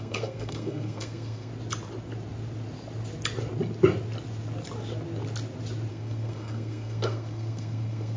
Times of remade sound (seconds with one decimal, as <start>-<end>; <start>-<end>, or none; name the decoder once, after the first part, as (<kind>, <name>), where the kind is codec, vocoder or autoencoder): 0.0-1.5 (codec, SNAC); 5.9-8.2